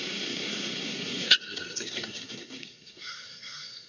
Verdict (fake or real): fake